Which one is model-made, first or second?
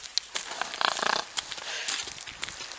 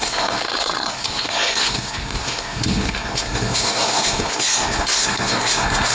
second